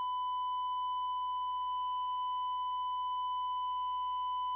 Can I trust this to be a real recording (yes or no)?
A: no